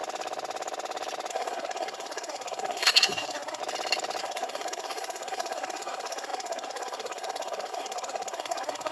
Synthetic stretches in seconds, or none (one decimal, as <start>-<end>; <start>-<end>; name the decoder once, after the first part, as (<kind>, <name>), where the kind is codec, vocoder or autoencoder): 1.3-3.6 (codec, SNAC); 4.2-8.9